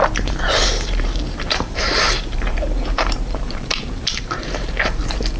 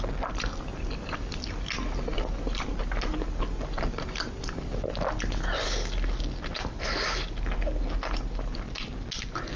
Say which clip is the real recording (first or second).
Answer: second